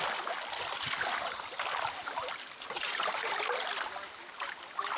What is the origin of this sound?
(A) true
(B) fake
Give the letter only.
A